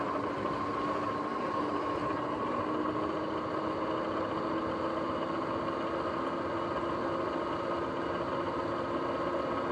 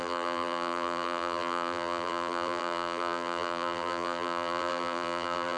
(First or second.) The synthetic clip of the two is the second